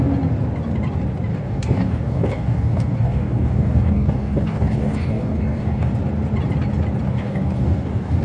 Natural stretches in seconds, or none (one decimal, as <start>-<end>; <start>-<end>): 0.0-1.3; 5.9-7.1